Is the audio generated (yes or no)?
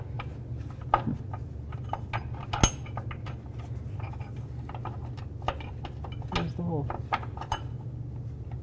no